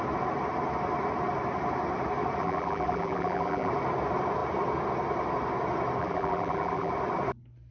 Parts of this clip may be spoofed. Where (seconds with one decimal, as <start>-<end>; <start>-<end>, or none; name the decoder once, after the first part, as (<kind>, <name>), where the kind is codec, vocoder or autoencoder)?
2.4-3.7 (vocoder, BigVGAN v2); 6.0-6.9